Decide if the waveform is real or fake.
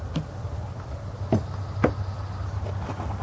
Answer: real